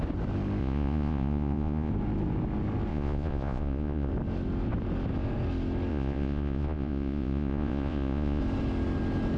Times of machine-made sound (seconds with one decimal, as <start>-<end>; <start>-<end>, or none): 0.6-1.9; 2.9-4.1; 5.9-8.4